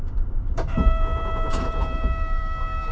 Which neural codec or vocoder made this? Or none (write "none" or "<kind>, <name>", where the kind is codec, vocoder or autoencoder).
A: vocoder, BigVGAN v2